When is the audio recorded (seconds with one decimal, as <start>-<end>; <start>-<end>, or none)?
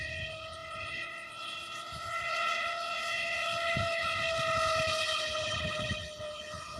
none